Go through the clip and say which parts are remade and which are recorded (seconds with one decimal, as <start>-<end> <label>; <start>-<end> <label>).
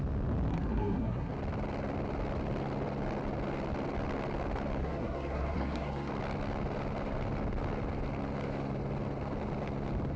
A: 0.0-0.5 recorded; 0.5-1.3 remade; 1.3-4.8 recorded; 4.8-6.1 remade; 6.1-10.2 recorded